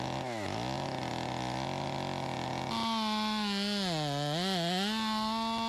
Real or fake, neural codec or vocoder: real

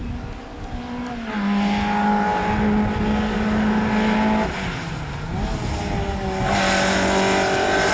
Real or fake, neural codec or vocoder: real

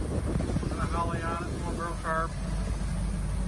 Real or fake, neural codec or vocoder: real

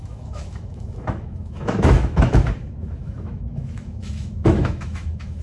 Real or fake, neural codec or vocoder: fake, autoencoder, DAC-VAE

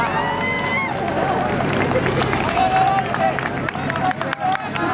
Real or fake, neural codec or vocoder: real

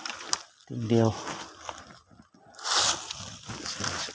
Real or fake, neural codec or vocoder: real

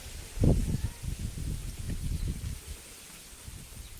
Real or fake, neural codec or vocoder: real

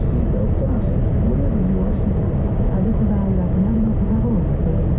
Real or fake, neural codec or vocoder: real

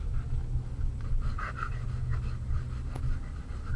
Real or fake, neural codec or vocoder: real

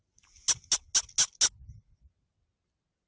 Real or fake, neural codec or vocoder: real